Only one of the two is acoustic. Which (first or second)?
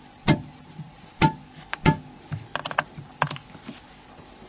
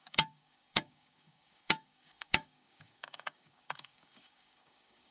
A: first